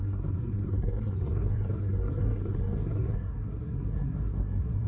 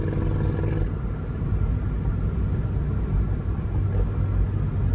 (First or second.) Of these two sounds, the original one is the second